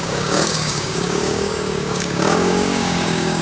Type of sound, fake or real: fake